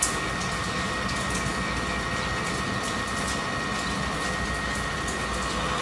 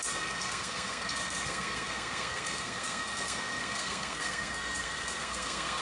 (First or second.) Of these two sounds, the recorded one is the first